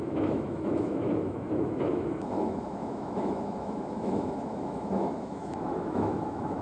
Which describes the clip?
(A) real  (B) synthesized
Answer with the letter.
B